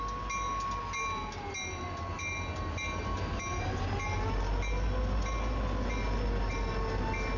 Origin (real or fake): real